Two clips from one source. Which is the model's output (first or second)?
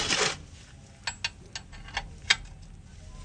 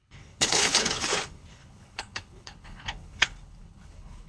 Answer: second